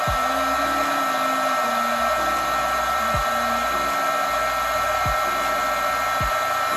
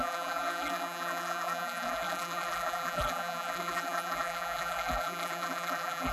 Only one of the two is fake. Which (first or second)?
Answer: second